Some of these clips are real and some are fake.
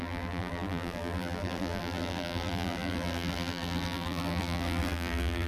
fake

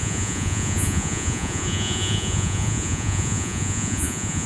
fake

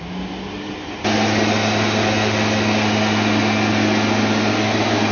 real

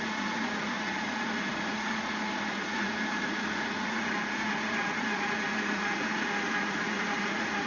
fake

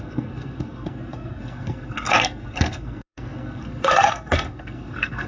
fake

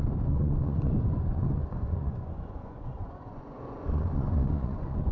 fake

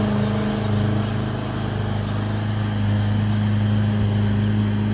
real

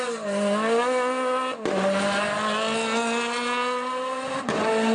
real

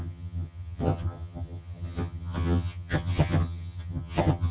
fake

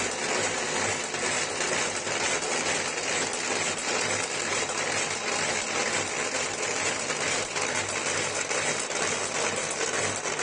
real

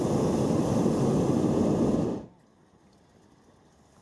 real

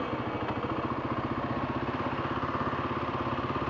real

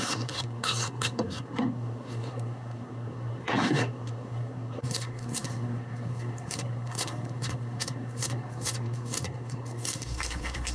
fake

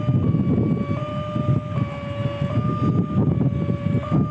real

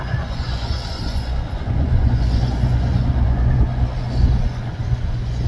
fake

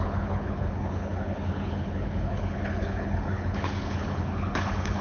fake